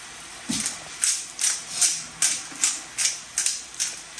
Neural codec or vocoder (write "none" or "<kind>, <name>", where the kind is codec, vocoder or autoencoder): none